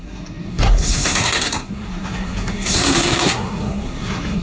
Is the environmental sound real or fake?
fake